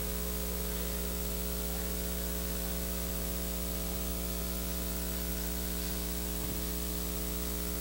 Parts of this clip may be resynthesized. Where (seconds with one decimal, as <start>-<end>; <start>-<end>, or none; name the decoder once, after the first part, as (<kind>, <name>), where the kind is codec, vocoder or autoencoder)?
4.1-5.3 (vocoder, BigVGAN v2)